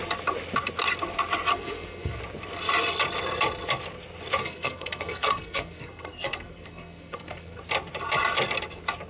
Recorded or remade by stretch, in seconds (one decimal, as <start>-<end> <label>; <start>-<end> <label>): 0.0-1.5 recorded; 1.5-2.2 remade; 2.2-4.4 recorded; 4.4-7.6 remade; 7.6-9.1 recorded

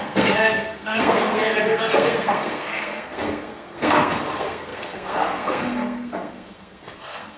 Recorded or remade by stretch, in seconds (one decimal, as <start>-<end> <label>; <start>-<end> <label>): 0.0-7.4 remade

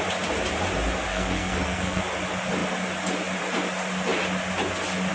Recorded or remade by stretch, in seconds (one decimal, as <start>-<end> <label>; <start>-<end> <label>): 0.0-1.1 recorded; 1.1-2.0 remade; 2.0-5.1 recorded